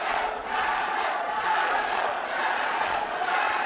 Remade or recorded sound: remade